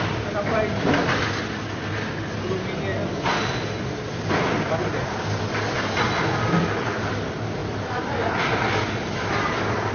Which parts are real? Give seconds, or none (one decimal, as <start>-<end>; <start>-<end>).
0.0-2.9; 5.4-7.6; 9.3-9.9